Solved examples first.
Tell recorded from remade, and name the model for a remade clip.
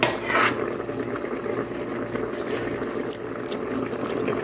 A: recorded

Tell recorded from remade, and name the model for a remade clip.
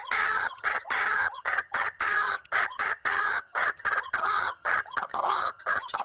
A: remade, vocoder, HiFi-GAN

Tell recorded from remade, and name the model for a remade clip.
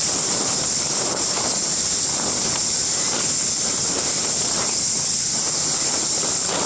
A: recorded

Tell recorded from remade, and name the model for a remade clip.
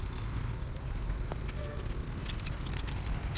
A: recorded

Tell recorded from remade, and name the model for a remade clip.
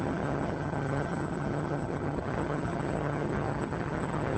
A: remade, vocoder, HiFi-GAN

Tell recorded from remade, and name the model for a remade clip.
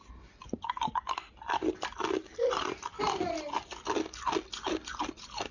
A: recorded